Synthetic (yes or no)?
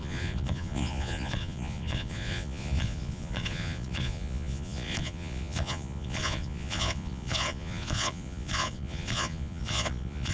yes